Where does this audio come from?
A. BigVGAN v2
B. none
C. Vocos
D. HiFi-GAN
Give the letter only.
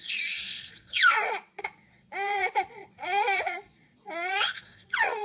C